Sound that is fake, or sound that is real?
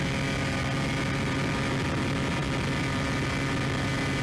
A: real